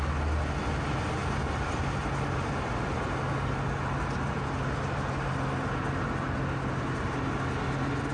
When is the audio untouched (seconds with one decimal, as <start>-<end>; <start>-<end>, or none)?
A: 0.0-8.1